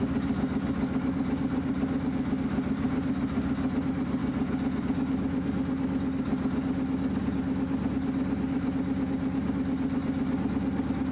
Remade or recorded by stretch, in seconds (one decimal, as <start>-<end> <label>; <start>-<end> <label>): 0.0-11.1 recorded

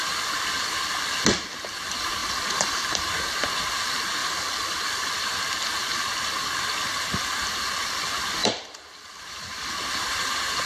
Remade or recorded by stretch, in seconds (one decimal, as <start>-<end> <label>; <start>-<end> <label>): 0.0-2.2 recorded; 2.2-3.1 remade; 3.1-4.2 recorded; 4.2-5.1 remade; 5.1-8.4 recorded; 8.4-9.2 remade; 9.2-10.7 recorded

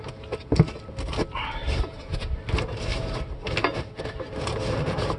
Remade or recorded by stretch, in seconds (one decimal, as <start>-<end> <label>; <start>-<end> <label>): 0.0-1.6 recorded; 1.6-2.4 remade; 2.4-2.9 recorded; 2.9-5.2 remade